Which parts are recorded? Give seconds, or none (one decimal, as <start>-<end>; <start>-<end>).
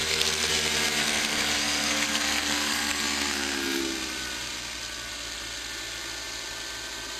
0.5-1.0; 3.8-7.2